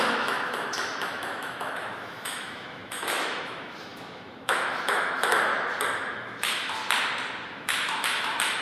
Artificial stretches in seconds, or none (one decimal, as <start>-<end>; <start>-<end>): 0.0-5.5; 6.1-6.8; 7.5-8.6